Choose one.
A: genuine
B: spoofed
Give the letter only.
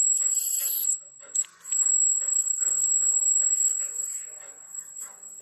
B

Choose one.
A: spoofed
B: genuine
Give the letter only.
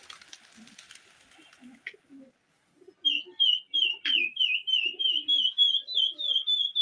B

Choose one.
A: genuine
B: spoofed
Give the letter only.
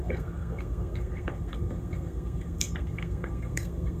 B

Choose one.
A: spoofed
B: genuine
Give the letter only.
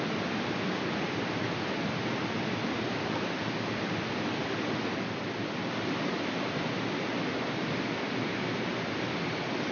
B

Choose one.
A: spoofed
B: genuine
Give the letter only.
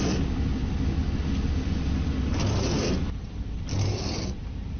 B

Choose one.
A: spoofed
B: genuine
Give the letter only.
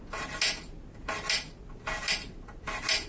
B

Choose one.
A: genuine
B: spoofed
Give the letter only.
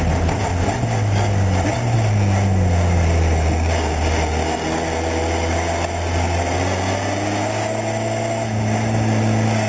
A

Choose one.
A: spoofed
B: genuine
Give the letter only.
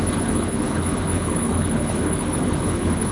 A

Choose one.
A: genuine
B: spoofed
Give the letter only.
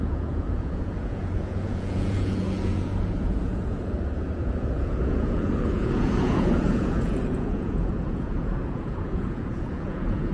B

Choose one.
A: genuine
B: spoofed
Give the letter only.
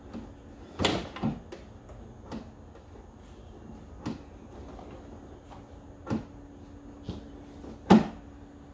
A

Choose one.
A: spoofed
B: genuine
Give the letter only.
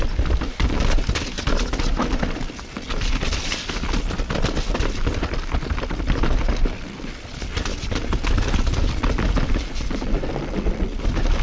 B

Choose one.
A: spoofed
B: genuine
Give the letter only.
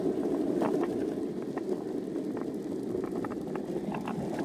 B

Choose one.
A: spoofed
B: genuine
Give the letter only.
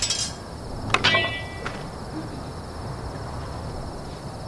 B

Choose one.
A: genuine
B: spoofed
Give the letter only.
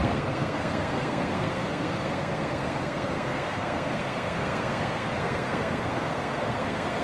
B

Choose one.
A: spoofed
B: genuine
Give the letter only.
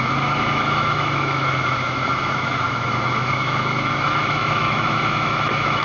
A